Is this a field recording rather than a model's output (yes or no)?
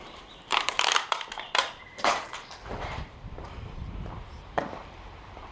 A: no